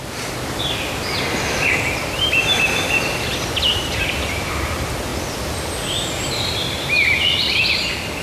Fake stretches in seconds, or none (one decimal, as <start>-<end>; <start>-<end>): 3.7-4.5